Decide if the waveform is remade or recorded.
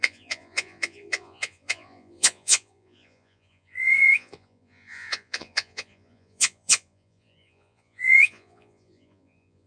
remade